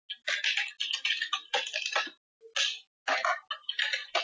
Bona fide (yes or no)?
yes